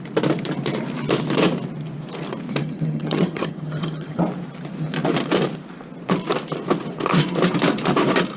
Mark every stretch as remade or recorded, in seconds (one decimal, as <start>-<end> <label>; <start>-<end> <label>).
0.0-2.6 recorded; 2.6-4.2 remade; 4.2-8.4 recorded